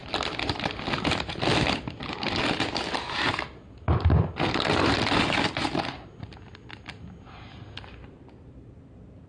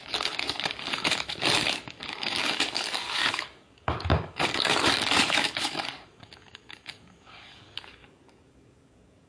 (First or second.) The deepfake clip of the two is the second